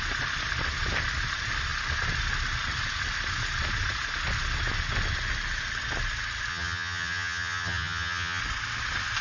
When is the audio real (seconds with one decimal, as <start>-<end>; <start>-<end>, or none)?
0.0-6.5; 8.4-9.2